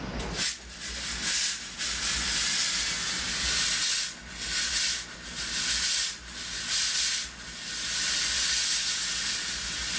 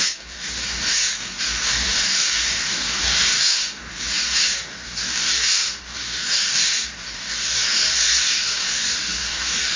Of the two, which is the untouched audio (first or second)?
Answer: first